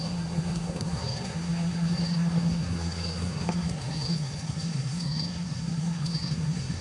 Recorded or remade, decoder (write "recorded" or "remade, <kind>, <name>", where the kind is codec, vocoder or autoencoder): remade, codec, SNAC